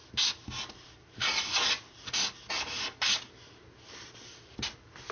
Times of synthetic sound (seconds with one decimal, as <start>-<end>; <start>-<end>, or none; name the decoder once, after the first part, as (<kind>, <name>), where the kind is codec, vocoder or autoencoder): none